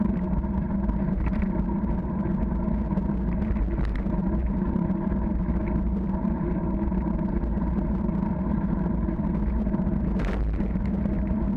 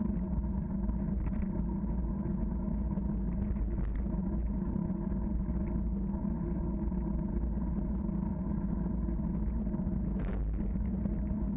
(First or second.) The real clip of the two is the second